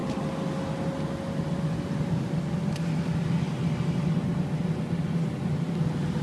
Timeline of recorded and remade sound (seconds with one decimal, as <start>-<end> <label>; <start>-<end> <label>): 0.0-6.2 recorded